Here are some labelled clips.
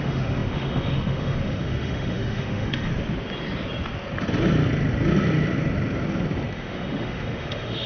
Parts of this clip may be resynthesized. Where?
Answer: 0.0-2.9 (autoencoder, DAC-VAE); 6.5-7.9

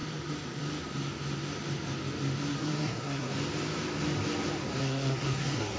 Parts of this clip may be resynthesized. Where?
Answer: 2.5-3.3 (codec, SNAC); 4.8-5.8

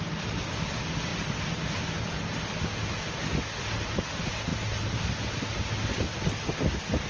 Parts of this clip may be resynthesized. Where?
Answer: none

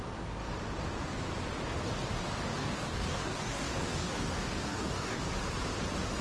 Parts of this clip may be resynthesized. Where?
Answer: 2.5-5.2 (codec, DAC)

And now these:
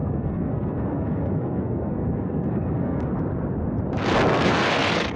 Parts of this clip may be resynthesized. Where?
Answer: 0.0-3.1 (codec, SNAC); 4.3-5.2

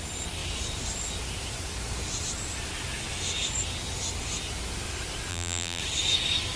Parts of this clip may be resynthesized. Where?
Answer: 5.3-5.8 (vocoder, BigVGAN v2)

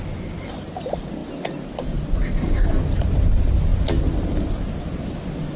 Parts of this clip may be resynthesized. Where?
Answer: none

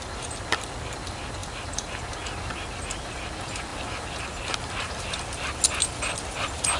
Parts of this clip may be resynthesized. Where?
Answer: none